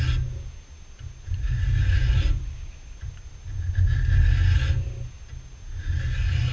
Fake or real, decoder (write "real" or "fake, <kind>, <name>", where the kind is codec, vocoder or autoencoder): real